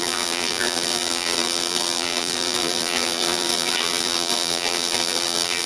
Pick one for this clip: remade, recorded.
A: remade